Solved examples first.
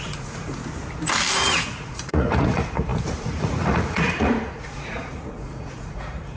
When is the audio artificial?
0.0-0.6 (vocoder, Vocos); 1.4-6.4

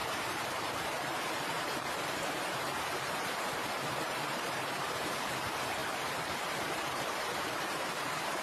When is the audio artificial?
0.0-8.4 (vocoder, BigVGAN v2)

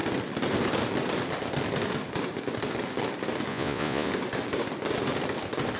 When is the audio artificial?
3.5-4.1 (vocoder, Vocos)

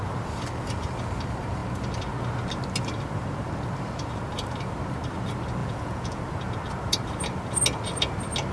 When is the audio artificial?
5.6-6.2 (vocoder, Vocos)